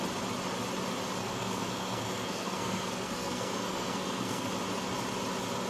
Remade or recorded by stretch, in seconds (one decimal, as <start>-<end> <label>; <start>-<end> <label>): 0.0-1.2 recorded; 1.2-4.5 remade; 4.5-5.7 recorded